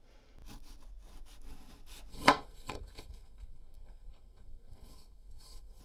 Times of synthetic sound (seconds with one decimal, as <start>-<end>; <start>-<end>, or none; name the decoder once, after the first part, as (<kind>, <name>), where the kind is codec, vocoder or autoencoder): 2.1-5.8 (codec, SNAC)

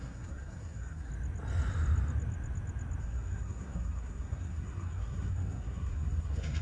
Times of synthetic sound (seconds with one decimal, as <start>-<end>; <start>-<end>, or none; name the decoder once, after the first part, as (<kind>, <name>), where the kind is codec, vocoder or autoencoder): 0.0-1.1 (codec, SNAC); 3.0-6.6

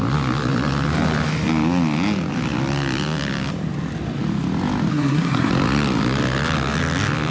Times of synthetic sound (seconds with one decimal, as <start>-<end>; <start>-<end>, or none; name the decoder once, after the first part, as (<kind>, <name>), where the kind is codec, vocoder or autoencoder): 4.9-5.5 (codec, SNAC)

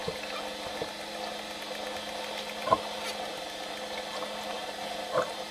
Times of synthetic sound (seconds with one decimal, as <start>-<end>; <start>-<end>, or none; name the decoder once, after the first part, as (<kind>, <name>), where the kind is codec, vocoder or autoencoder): none

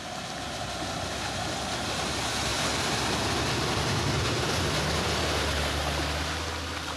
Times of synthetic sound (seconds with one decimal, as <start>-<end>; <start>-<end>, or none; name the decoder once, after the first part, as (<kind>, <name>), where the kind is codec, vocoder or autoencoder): none